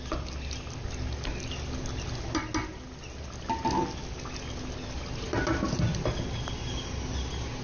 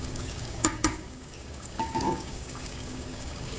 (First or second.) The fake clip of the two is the second